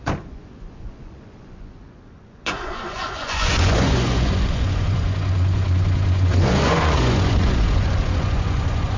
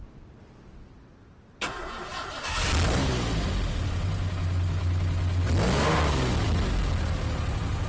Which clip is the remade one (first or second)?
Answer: first